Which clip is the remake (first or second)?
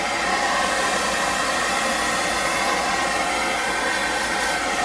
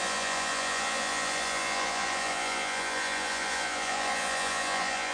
second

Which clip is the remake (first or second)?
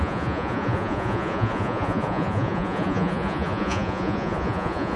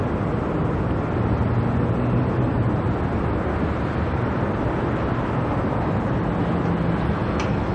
first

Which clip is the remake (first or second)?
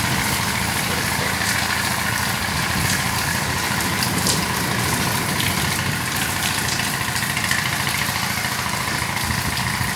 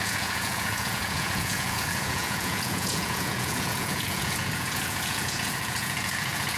second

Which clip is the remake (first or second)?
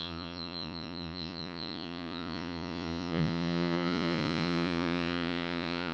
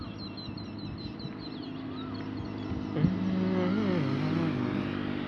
first